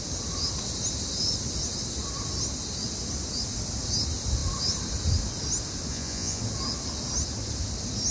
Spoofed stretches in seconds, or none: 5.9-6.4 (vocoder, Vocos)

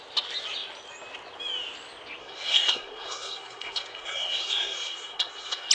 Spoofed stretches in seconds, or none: 2.2-5.7 (codec, SNAC)

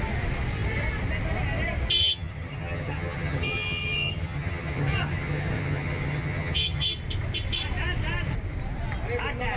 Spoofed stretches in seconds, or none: 2.0-6.9 (vocoder, HiFi-GAN)

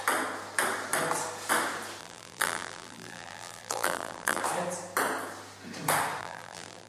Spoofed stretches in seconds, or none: 2.0-4.4 (vocoder, BigVGAN v2); 6.2-6.9

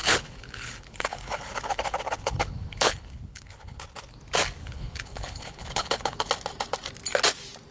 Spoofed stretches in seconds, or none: 0.0-3.8 (codec, HILCodec); 4.6-6.3

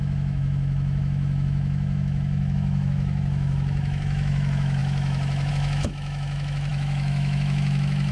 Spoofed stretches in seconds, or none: 0.0-8.1 (autoencoder, DAC-VAE)